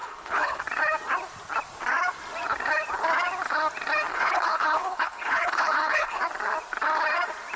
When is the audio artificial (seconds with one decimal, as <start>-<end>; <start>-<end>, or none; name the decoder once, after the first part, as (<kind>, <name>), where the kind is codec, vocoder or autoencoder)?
0.0-0.6 (codec, HILCodec); 4.1-6.2